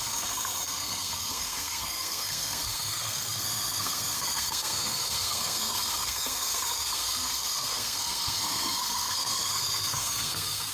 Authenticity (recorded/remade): remade